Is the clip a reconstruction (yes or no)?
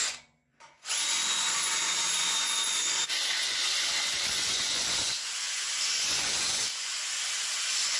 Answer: yes